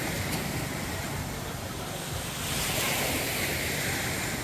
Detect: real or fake real